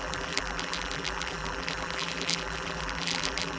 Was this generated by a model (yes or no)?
yes